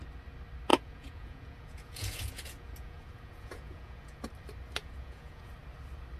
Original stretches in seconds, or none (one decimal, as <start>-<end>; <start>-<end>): 0.0-0.7; 4.2-4.8; 5.5-6.2